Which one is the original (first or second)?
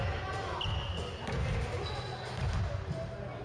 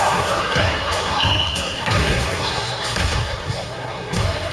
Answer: first